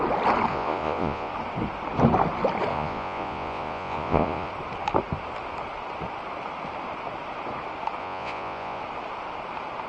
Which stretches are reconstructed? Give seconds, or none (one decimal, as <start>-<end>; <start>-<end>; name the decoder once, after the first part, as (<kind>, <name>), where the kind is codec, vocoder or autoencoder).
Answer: 0.5-1.3 (vocoder, Vocos); 2.7-4.5; 8.0-8.8